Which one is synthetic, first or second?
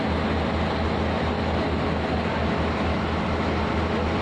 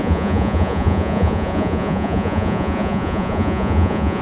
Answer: second